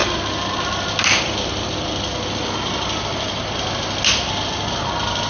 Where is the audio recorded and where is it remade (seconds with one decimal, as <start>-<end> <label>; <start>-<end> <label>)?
0.0-5.3 recorded